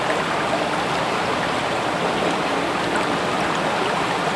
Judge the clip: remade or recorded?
recorded